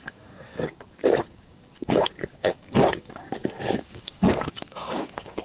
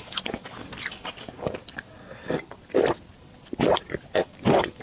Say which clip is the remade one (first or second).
first